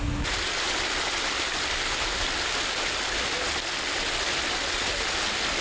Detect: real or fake real